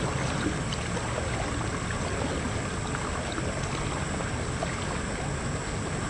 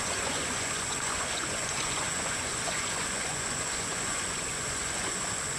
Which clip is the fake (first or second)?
second